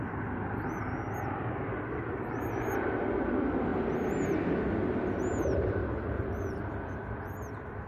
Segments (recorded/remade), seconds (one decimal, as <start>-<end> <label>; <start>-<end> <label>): 0.0-5.8 recorded; 5.8-6.7 remade; 6.7-7.9 recorded